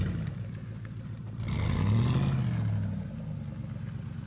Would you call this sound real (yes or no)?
yes